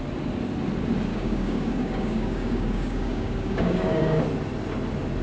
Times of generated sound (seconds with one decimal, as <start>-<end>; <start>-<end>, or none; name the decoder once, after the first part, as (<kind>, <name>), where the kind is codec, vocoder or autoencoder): 1.1-4.2 (codec, DAC)